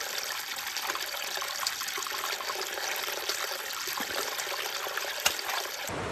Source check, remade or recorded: recorded